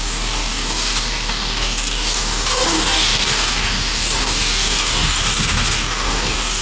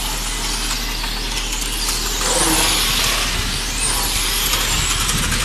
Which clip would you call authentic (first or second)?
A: second